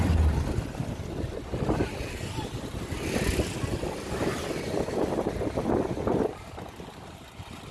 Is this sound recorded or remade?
recorded